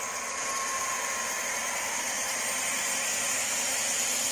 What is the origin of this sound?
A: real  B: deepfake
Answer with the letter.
A